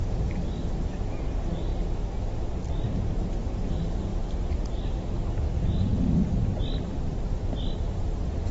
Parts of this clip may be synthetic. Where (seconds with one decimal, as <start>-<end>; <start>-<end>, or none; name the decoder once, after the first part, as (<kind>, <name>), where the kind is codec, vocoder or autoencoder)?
none